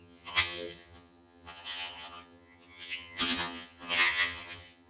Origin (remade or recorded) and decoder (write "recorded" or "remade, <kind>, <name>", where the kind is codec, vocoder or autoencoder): remade, vocoder, HiFi-GAN